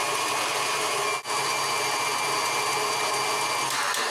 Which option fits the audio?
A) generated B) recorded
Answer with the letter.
B